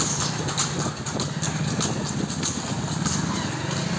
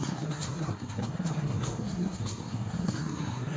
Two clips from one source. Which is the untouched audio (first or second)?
first